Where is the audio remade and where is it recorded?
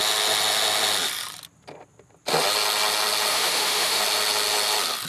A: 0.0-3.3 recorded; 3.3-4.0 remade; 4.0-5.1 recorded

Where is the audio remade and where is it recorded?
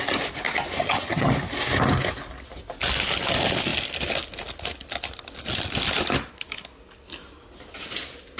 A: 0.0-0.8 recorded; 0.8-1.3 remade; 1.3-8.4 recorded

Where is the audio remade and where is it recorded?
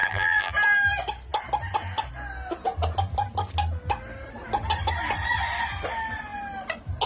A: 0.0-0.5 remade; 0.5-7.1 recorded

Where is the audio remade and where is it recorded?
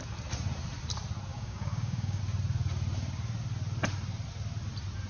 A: 0.0-1.3 recorded; 1.3-2.2 remade; 2.2-5.1 recorded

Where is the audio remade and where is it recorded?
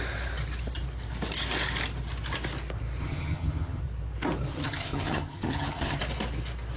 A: 0.0-3.0 recorded; 3.0-3.8 remade; 3.8-4.5 recorded; 4.5-6.0 remade; 6.0-6.8 recorded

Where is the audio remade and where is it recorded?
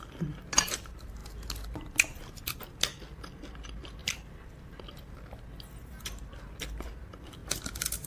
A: 0.0-8.1 recorded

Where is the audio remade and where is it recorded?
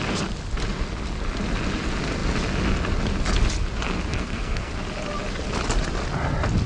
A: 0.0-4.1 recorded; 4.1-4.7 remade; 4.7-6.7 recorded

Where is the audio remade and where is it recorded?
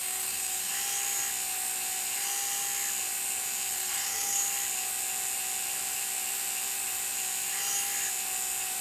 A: 0.0-0.7 remade; 0.7-3.7 recorded; 3.7-4.4 remade; 4.4-8.8 recorded